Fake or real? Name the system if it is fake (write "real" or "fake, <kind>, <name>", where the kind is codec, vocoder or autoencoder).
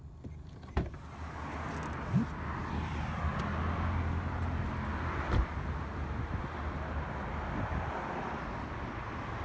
real